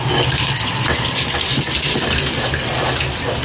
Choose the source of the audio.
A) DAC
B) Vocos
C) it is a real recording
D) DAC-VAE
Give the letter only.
C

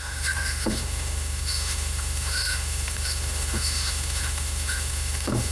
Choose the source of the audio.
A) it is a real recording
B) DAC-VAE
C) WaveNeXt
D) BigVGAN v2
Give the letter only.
B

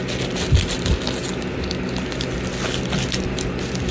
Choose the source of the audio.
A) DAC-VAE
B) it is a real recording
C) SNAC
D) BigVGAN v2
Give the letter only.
B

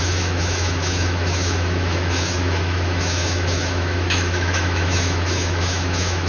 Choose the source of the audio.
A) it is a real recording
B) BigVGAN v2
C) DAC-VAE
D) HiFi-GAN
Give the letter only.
C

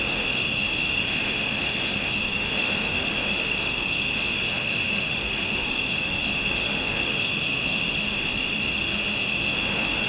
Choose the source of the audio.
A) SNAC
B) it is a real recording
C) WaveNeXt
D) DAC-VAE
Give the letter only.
D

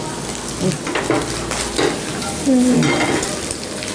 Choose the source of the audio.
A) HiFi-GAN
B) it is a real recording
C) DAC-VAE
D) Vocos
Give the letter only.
B